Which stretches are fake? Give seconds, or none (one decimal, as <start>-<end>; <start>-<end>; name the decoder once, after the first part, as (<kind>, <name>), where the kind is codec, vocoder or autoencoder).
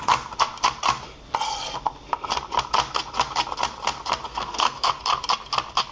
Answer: 4.3-4.9 (codec, SNAC)